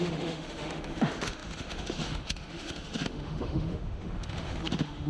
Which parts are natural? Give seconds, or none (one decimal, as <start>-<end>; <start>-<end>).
none